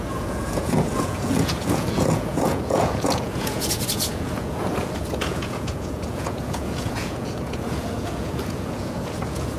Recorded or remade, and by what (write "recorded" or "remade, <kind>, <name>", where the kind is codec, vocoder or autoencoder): remade, vocoder, Vocos